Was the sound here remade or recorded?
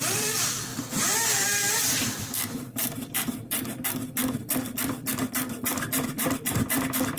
remade